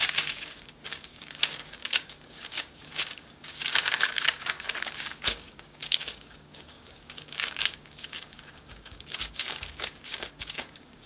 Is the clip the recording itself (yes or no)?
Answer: no